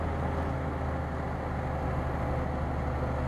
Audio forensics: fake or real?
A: real